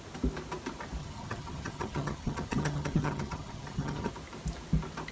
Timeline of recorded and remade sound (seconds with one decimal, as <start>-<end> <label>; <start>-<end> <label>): 0.0-1.0 recorded; 1.0-4.1 remade; 4.1-5.1 recorded